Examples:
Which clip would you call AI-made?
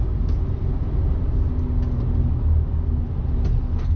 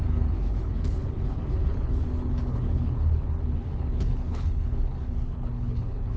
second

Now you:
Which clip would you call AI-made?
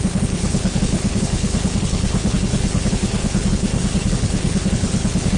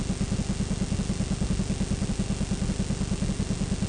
first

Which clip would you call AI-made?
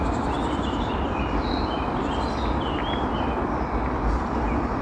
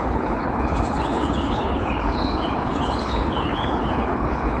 second